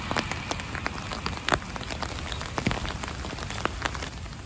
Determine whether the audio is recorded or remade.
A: recorded